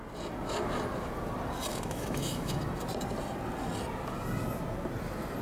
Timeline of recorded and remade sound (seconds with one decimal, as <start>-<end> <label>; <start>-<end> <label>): 0.0-1.7 recorded; 1.7-2.6 remade; 2.6-5.4 recorded